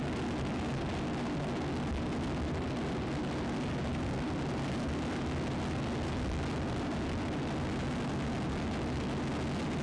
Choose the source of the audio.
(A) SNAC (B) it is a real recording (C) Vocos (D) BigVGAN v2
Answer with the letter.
B